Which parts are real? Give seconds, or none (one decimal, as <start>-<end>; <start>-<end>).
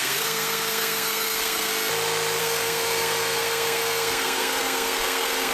1.7-2.4